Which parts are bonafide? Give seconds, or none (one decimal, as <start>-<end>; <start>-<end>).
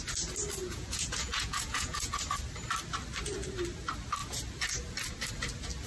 0.0-0.6; 2.2-5.9